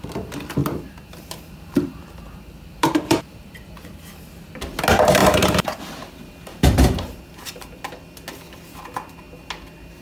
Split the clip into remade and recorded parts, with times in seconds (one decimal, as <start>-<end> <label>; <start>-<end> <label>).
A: 0.0-0.6 recorded; 0.6-4.5 remade; 4.5-5.2 recorded; 5.2-5.8 remade; 5.8-6.5 recorded; 6.5-7.8 remade; 7.8-10.0 recorded